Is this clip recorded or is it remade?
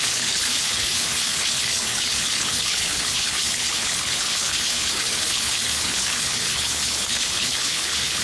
remade